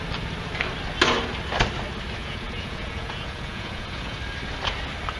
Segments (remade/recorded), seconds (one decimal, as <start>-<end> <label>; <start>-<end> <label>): 0.0-2.2 recorded; 2.2-4.2 remade; 4.2-5.2 recorded